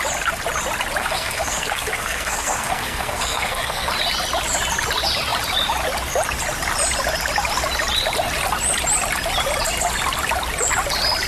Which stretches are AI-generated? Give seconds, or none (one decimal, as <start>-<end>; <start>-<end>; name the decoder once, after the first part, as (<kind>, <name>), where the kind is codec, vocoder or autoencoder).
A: 1.0-3.9 (codec, SNAC)